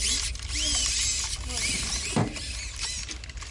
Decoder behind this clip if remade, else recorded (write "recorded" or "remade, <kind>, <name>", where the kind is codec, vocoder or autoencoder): recorded